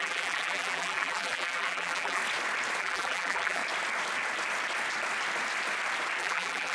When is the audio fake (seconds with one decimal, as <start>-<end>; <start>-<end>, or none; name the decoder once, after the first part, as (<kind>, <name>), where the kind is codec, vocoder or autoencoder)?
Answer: 0.0-2.2 (vocoder, BigVGAN v2); 2.8-3.6; 6.2-6.7